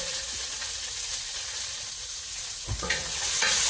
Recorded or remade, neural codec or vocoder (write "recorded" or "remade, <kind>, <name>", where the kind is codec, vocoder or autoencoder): remade, vocoder, Vocos